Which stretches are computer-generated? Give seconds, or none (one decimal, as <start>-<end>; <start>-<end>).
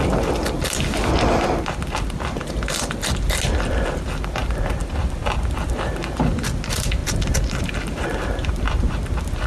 none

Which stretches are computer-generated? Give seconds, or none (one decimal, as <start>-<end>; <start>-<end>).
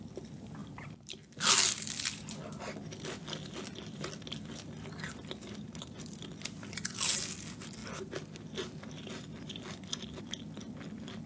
none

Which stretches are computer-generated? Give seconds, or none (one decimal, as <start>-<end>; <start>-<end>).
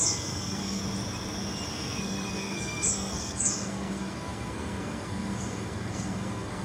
0.0-0.8; 1.7-6.6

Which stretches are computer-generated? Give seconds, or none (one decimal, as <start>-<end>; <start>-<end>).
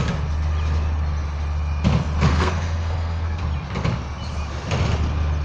2.3-3.4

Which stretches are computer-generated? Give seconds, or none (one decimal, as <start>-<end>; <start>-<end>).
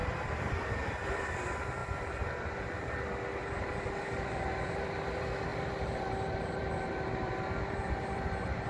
0.0-0.6; 3.4-5.0; 5.5-7.3